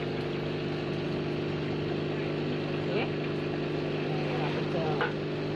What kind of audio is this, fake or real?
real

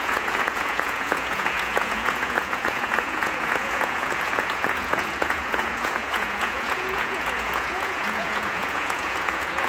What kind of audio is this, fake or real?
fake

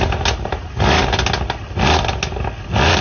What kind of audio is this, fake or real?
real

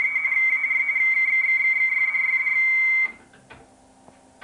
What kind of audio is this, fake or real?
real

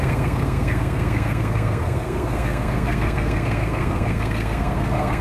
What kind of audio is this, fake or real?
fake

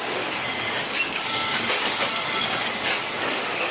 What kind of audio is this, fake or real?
fake